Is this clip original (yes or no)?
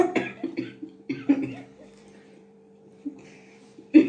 no